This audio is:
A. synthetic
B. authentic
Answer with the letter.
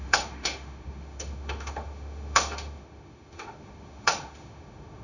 A